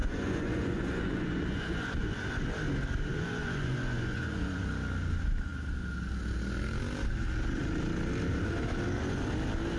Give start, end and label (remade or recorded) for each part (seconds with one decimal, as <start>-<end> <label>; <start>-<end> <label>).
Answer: 0.0-2.2 remade; 2.2-3.1 recorded; 3.1-4.6 remade; 4.6-9.8 recorded